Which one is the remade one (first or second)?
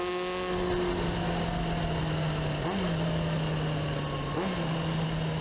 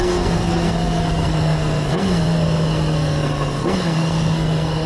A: second